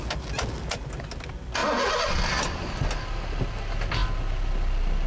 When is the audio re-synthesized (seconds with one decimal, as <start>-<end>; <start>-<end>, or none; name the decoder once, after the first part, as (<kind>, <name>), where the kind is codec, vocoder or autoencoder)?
none